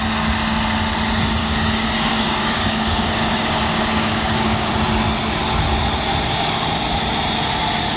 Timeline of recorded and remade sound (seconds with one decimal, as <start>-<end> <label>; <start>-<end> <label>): 0.0-1.4 recorded; 1.4-4.7 remade; 4.7-8.0 recorded